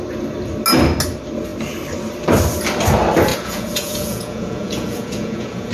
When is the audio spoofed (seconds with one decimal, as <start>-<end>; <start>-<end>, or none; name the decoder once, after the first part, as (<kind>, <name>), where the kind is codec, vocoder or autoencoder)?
3.3-5.7 (vocoder, Vocos)